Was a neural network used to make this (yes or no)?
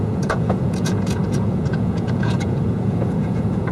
yes